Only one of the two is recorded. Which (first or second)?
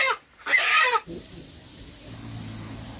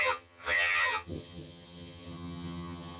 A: first